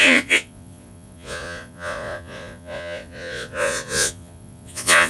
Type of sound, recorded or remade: remade